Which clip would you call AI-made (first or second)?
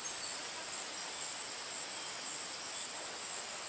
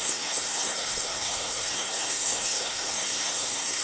second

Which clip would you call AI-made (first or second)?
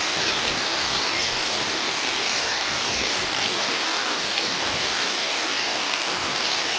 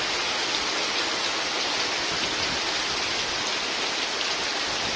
first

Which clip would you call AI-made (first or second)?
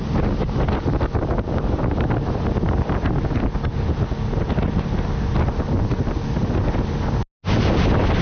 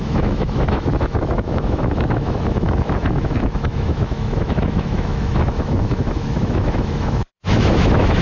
second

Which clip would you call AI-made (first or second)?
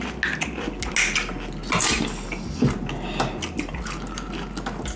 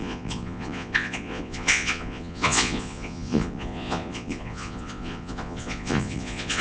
second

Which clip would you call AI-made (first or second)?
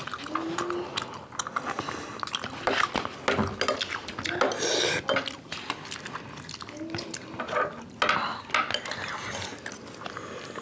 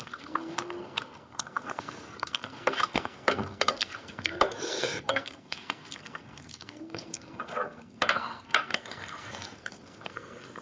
second